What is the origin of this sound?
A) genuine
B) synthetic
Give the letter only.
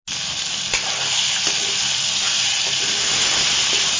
A